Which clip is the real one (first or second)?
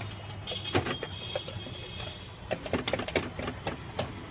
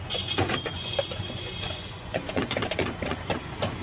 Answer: first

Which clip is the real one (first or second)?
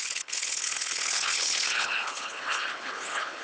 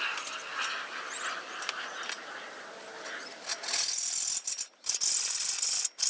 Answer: second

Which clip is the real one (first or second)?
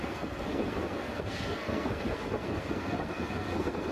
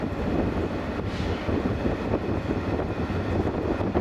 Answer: second